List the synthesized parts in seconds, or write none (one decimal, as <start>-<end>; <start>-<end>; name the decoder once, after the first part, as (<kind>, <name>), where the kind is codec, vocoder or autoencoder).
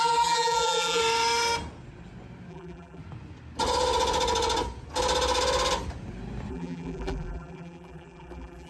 0.0-1.0 (vocoder, BigVGAN v2); 2.5-3.0; 6.5-8.7